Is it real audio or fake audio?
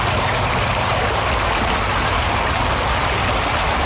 real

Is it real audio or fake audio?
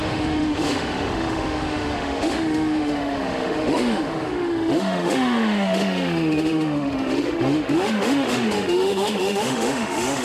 fake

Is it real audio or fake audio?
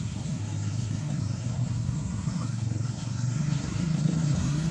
fake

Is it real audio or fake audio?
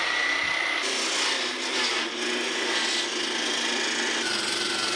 real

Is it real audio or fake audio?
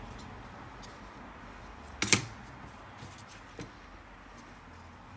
real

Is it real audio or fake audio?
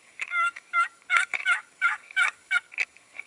fake